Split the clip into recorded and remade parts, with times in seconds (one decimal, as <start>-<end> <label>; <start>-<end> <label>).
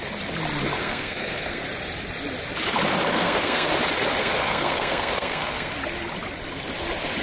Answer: 0.0-0.8 recorded; 0.8-1.6 remade; 1.6-3.1 recorded; 3.1-3.7 remade; 3.7-4.2 recorded; 4.2-5.7 remade; 5.7-7.2 recorded